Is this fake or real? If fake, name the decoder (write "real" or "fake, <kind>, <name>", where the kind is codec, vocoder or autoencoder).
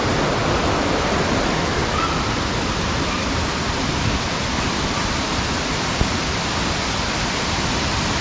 real